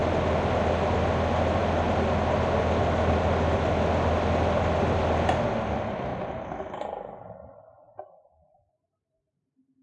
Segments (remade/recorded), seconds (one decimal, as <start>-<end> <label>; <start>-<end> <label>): 0.0-9.8 recorded

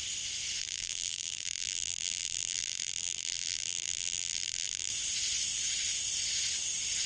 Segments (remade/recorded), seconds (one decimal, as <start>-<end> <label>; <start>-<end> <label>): 0.0-0.6 recorded; 0.6-4.9 remade; 4.9-7.1 recorded

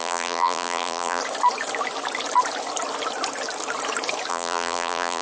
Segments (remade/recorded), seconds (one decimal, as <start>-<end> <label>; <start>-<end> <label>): 0.0-1.2 remade; 1.2-4.3 recorded; 4.3-5.2 remade